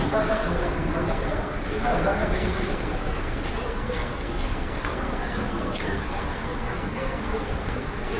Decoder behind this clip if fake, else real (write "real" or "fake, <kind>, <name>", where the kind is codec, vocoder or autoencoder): fake, codec, SNAC